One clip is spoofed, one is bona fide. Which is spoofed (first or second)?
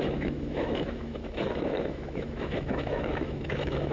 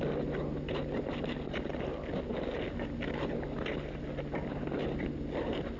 first